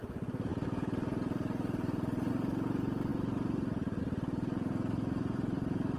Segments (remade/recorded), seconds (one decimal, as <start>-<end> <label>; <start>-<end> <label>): 0.0-6.0 recorded